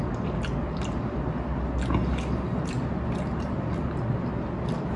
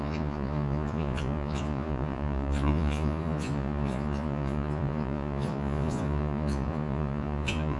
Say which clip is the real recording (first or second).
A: first